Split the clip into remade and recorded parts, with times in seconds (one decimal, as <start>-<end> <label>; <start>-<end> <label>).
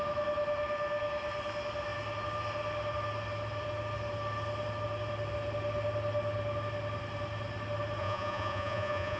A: 0.0-8.0 recorded; 8.0-9.2 remade